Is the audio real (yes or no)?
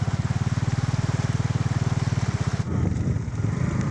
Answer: yes